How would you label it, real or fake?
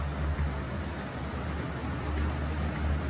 real